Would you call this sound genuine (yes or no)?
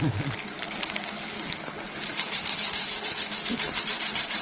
yes